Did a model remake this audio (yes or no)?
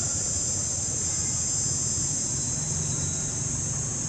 no